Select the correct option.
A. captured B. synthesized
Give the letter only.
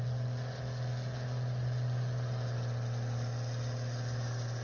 A